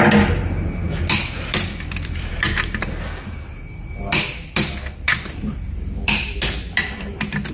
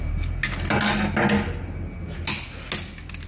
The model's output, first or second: first